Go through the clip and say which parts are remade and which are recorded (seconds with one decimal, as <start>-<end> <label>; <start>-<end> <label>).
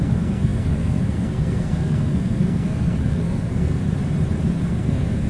0.0-3.8 remade; 3.8-4.6 recorded; 4.6-5.3 remade